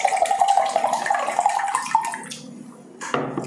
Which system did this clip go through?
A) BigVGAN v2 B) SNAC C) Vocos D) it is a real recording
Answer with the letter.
D